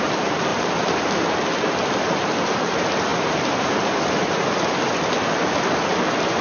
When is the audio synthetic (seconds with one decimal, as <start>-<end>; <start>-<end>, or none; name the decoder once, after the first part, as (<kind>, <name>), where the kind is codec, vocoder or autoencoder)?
0.5-1.0 (vocoder, BigVGAN v2); 3.1-3.7